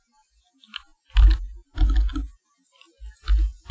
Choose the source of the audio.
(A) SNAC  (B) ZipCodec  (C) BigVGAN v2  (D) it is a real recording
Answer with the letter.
D